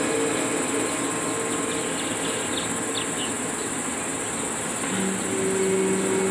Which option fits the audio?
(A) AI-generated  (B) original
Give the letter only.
B